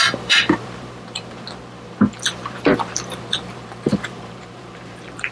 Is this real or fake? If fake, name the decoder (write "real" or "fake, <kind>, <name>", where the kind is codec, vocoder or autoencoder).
fake, vocoder, BigVGAN v2